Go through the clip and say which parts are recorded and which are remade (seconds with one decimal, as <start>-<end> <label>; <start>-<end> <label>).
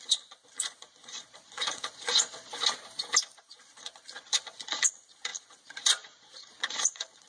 0.0-2.5 remade; 2.5-3.4 recorded; 3.4-7.3 remade